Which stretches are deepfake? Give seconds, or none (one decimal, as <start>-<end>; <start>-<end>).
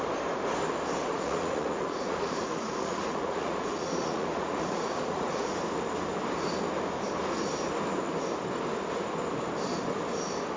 1.0-5.6